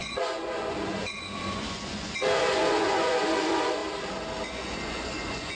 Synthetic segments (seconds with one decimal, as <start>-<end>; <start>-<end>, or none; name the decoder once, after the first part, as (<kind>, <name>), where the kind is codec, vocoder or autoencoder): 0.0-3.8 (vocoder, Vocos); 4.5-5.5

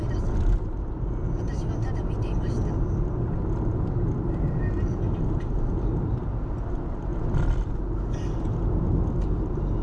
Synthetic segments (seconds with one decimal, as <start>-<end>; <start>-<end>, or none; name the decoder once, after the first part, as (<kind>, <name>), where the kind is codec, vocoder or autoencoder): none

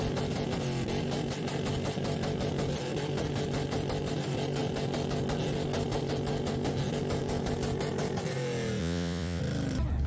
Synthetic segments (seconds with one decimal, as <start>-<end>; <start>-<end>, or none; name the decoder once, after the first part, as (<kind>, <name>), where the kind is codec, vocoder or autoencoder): 8.8-9.4 (vocoder, Vocos)